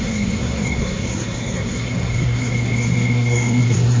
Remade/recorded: remade